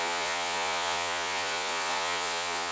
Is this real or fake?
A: fake